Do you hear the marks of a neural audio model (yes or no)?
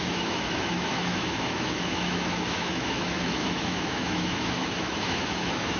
yes